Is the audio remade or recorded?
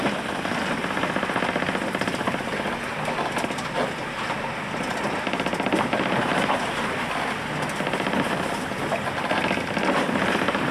recorded